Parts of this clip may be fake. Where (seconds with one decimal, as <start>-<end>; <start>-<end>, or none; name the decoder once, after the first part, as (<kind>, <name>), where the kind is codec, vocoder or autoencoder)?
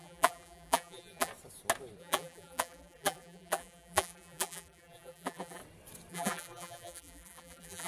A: 0.0-1.3 (vocoder, BigVGAN v2); 2.0-5.6; 6.1-7.9